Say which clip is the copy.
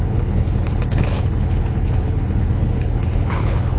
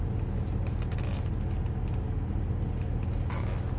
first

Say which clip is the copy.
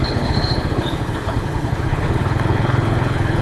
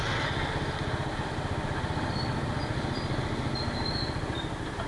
first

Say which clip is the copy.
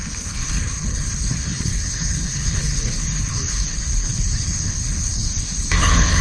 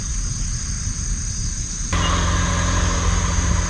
first